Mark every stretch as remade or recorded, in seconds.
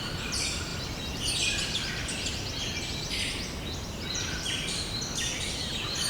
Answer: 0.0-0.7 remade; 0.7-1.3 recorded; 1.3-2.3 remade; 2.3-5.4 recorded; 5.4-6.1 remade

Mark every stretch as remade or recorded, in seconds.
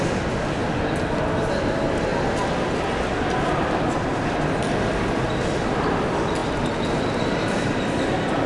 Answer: 0.0-0.6 remade; 0.6-1.5 recorded; 1.5-2.1 remade; 2.1-3.3 recorded; 3.3-4.1 remade; 4.1-5.1 recorded; 5.1-6.4 remade; 6.4-7.1 recorded; 7.1-8.5 remade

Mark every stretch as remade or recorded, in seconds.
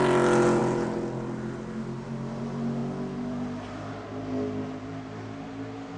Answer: 0.0-6.0 recorded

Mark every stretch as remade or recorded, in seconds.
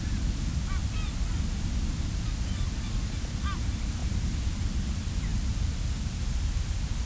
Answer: 0.0-7.1 recorded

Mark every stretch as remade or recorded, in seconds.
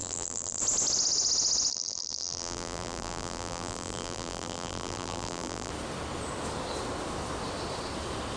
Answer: 0.0-0.6 remade; 0.6-1.7 recorded; 1.7-5.7 remade; 5.7-8.4 recorded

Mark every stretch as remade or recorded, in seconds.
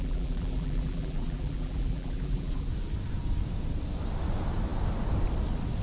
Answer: 0.0-2.7 remade; 2.7-5.8 recorded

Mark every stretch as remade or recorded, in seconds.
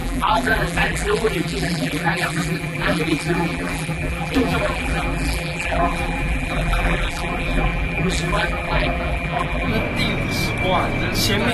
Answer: 0.0-9.7 remade; 9.7-11.5 recorded